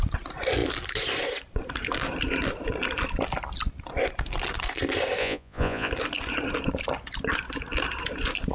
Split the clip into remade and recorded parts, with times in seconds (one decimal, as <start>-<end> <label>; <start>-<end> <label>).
0.0-5.2 recorded; 5.2-5.9 remade; 5.9-8.5 recorded